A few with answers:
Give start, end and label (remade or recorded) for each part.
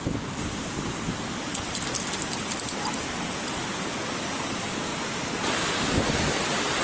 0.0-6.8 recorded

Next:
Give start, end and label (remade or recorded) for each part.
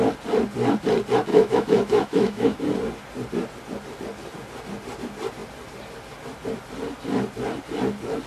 0.0-1.3 recorded; 1.3-2.6 remade; 2.6-8.3 recorded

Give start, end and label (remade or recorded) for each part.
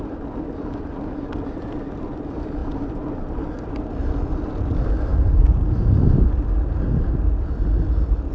0.0-8.3 recorded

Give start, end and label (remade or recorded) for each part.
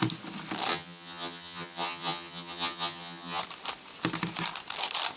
0.0-0.7 recorded; 0.7-3.4 remade; 3.4-5.2 recorded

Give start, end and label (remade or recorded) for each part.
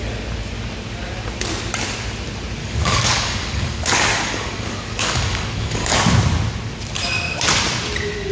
0.0-2.6 recorded; 2.6-6.0 remade; 6.0-8.3 recorded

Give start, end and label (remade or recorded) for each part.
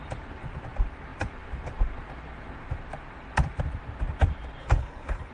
0.0-4.6 recorded; 4.6-5.3 remade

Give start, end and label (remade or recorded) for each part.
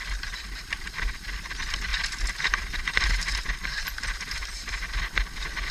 0.0-1.9 remade; 1.9-5.0 recorded; 5.0-5.7 remade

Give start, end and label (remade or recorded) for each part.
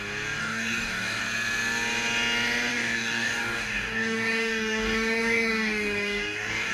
0.0-0.4 recorded; 0.4-1.2 remade; 1.2-2.7 recorded; 2.7-6.7 remade